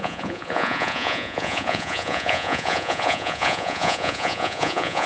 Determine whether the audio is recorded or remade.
remade